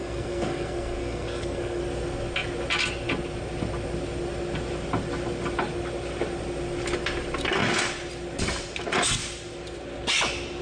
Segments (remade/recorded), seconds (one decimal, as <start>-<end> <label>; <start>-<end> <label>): 0.0-1.8 remade; 1.8-10.6 recorded